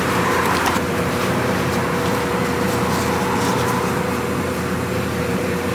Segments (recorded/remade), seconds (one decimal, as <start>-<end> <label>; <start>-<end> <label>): 0.0-1.8 remade; 1.8-5.2 recorded; 5.2-5.7 remade